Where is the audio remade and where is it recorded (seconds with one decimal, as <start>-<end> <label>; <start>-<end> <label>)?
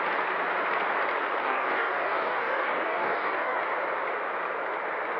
0.0-1.4 recorded; 1.4-3.6 remade; 3.6-5.2 recorded